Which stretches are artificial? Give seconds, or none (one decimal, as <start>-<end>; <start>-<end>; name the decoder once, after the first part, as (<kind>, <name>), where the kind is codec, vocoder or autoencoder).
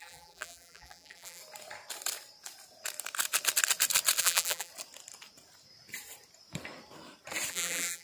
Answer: 0.0-1.4 (vocoder, BigVGAN v2); 4.2-4.7; 7.5-8.0